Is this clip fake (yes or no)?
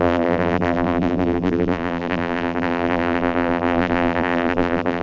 yes